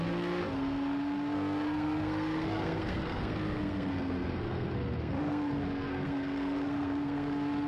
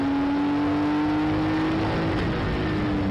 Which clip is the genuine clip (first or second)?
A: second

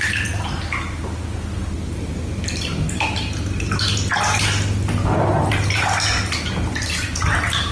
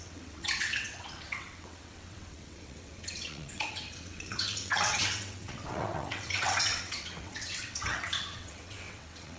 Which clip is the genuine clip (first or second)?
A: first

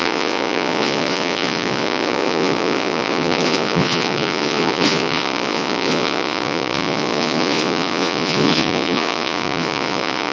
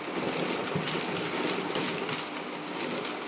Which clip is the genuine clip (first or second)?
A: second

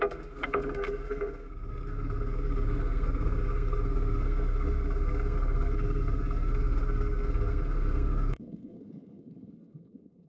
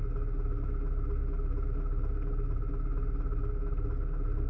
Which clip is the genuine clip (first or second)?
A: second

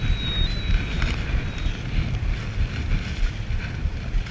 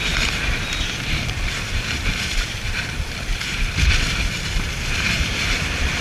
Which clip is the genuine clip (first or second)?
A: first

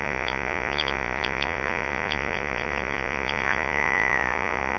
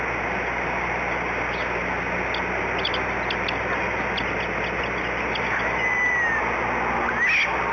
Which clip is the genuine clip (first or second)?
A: second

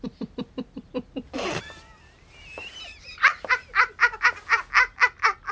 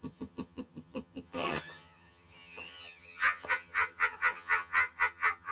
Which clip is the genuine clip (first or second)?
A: first